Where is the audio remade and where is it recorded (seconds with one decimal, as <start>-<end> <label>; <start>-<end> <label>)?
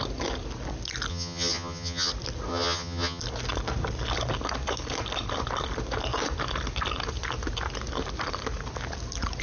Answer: 0.0-1.1 recorded; 1.1-2.1 remade; 2.1-2.5 recorded; 2.5-3.2 remade; 3.2-9.4 recorded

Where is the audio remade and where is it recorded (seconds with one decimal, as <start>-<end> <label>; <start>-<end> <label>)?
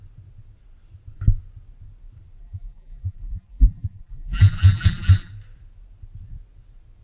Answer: 0.0-2.4 recorded; 2.4-5.3 remade; 5.3-7.0 recorded